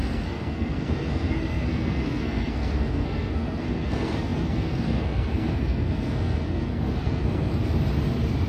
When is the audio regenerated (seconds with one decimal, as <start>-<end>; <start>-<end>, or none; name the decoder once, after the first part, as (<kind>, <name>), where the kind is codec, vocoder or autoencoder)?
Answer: 0.0-7.6 (codec, SNAC)